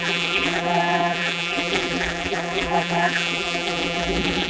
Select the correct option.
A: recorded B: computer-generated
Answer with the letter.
B